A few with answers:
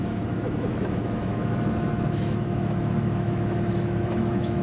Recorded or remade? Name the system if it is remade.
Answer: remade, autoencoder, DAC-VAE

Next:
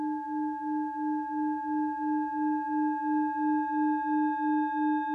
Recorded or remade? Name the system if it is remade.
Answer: recorded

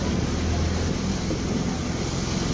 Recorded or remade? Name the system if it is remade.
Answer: recorded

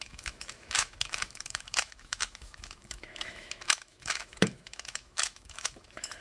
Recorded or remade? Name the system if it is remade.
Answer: remade, autoencoder, DAC-VAE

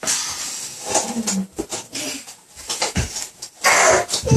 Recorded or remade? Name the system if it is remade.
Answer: recorded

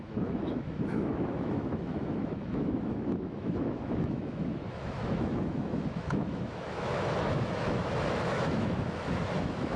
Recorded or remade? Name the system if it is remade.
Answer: remade, autoencoder, DAC-VAE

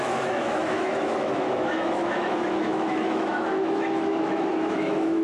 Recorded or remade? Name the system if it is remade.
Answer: remade, autoencoder, DAC-VAE